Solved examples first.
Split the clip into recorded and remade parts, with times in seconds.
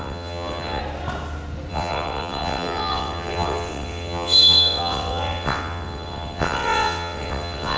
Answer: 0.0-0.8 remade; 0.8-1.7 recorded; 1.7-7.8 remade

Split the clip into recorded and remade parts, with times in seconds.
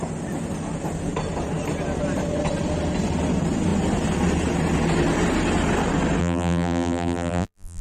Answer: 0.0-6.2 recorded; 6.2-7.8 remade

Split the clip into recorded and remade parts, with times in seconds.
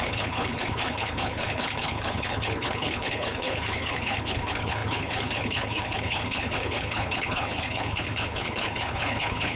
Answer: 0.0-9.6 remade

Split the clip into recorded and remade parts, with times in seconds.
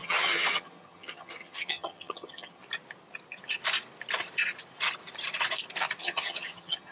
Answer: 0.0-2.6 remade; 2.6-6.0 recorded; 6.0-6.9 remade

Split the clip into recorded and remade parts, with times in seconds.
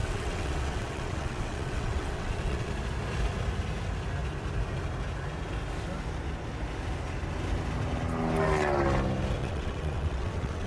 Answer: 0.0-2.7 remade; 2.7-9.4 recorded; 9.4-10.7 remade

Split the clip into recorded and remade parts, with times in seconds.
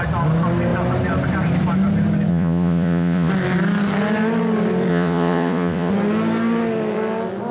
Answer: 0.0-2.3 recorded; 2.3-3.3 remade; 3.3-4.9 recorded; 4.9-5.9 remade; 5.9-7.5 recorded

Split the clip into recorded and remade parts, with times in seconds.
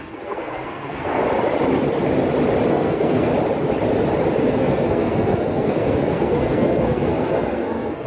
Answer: 0.0-1.2 remade; 1.2-2.7 recorded; 2.7-3.3 remade; 3.3-4.4 recorded; 4.4-8.1 remade